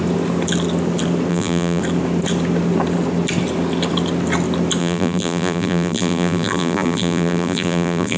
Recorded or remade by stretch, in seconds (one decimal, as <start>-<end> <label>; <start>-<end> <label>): 0.0-1.3 recorded; 1.3-1.8 remade; 1.8-4.8 recorded; 4.8-8.2 remade